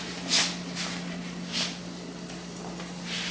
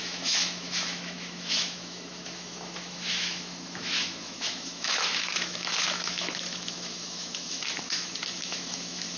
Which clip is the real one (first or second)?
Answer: first